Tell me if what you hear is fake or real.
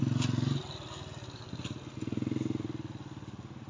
real